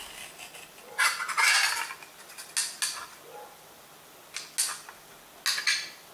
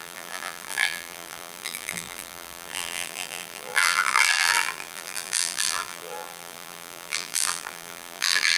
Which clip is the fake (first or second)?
second